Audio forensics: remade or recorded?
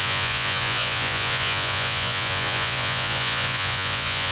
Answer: remade